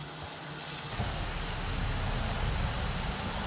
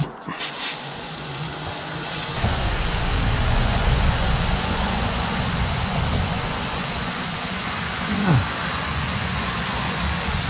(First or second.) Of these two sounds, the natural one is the first